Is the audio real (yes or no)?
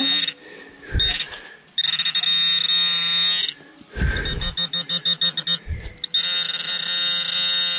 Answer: yes